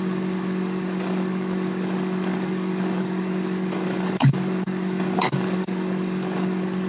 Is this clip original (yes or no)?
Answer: no